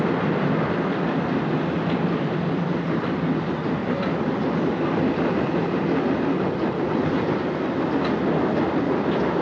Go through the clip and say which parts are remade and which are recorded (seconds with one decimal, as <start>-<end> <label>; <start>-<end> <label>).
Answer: 0.0-9.4 recorded